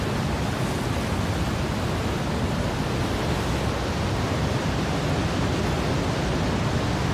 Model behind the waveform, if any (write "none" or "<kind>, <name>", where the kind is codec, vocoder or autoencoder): none